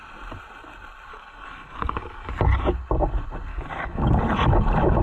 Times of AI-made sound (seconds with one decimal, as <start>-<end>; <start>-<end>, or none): 1.1-2.3; 3.5-4.2